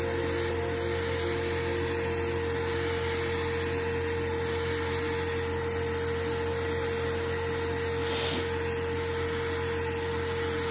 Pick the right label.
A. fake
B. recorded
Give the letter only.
B